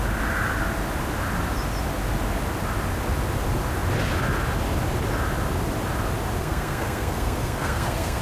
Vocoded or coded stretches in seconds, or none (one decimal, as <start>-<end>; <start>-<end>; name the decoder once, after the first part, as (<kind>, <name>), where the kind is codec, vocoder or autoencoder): 6.4-8.2 (codec, SNAC)

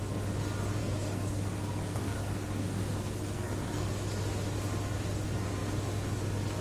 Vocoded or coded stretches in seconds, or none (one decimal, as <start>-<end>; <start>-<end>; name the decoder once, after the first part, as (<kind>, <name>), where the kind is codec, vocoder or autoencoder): 0.8-3.9 (codec, SNAC)

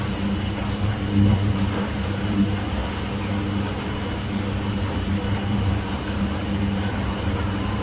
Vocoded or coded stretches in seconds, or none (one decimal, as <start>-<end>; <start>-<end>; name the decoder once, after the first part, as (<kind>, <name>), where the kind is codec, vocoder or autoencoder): 0.0-2.8 (vocoder, BigVGAN v2); 4.7-7.8